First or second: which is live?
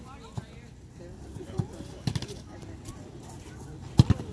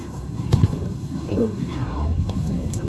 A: first